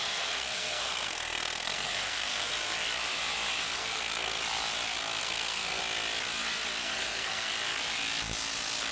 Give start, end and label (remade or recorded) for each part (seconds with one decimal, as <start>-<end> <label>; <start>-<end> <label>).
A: 0.0-2.5 remade; 2.5-3.8 recorded; 3.8-4.4 remade; 4.4-5.2 recorded; 5.2-5.8 remade; 5.8-6.8 recorded; 6.8-7.5 remade; 7.5-8.9 recorded